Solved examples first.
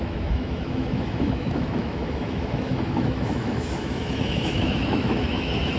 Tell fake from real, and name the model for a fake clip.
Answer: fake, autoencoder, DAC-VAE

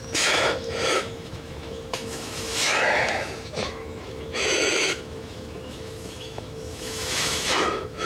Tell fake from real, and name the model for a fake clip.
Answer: fake, autoencoder, DAC-VAE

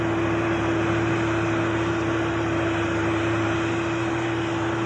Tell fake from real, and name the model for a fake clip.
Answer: real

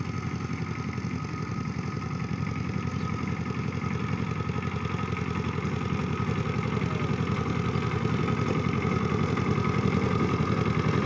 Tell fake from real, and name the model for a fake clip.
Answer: real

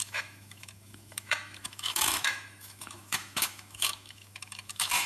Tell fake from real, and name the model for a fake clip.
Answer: fake, autoencoder, DAC-VAE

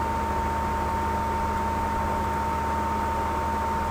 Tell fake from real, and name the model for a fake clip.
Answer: real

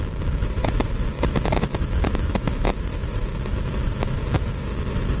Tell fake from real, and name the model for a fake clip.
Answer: fake, autoencoder, DAC-VAE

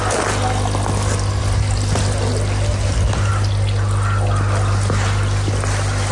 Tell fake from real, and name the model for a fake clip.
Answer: real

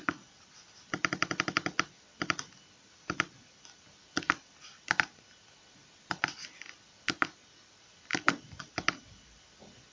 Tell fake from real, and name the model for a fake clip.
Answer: real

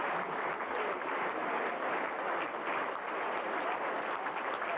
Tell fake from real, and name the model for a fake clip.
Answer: real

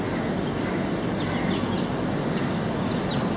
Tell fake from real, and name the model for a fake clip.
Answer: real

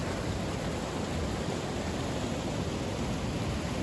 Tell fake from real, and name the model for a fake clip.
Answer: real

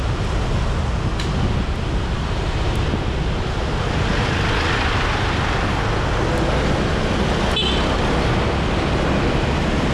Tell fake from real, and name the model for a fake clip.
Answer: real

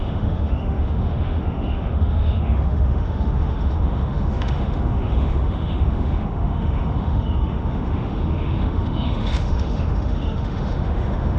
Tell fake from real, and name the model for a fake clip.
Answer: fake, autoencoder, DAC-VAE